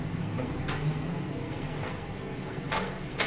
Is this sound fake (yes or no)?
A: yes